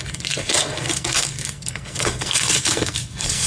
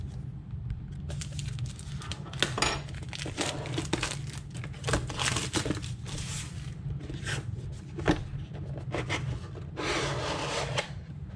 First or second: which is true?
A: second